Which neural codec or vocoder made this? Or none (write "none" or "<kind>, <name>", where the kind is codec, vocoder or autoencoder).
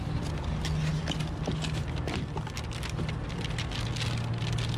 none